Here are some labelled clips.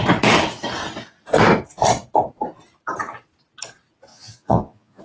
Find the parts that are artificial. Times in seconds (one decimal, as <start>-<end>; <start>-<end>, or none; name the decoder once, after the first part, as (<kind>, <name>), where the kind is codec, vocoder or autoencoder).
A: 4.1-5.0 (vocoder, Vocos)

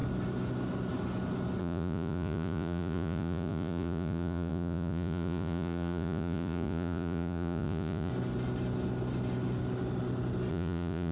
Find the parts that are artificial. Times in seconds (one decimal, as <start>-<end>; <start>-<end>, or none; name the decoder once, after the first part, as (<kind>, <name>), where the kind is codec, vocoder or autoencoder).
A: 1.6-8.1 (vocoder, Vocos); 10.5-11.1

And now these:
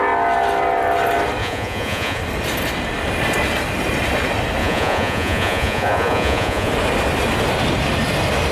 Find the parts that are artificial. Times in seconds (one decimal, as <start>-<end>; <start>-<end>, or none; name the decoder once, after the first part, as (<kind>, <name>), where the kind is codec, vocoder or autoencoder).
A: 1.4-2.2 (vocoder, Vocos); 4.6-6.7

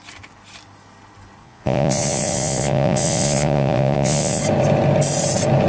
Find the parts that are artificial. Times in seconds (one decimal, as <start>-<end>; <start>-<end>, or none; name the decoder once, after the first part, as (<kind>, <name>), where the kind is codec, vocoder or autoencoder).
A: 1.4-4.4 (vocoder, Vocos)